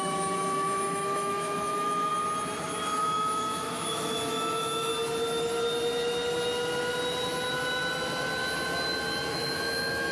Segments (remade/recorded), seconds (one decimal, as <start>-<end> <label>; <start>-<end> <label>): 0.0-2.1 remade; 2.1-3.0 recorded; 3.0-4.9 remade; 4.9-9.3 recorded; 9.3-10.1 remade